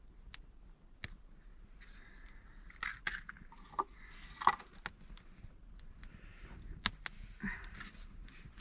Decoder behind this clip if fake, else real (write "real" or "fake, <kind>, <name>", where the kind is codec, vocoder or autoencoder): real